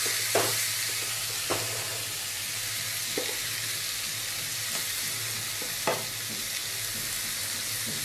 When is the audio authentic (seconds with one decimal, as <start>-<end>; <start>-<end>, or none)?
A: 0.0-8.0